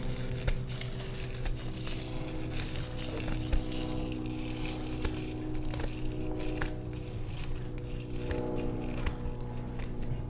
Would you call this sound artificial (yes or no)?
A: no